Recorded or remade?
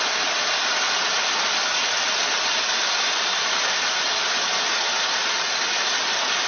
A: recorded